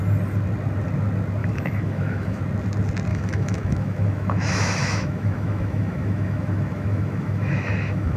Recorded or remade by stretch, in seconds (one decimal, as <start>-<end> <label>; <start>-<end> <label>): 0.0-1.4 recorded; 1.4-2.4 remade; 2.4-3.1 recorded; 3.1-8.2 remade